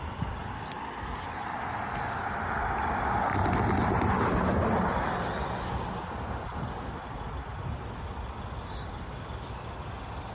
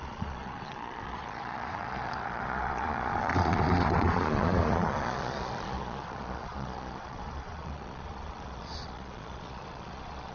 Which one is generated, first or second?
second